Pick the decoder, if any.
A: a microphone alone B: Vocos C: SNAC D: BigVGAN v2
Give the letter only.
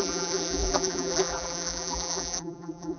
D